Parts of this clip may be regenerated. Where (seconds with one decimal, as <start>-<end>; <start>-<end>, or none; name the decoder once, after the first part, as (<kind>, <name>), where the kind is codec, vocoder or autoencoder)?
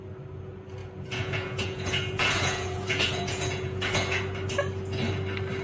0.8-4.2 (vocoder, Vocos)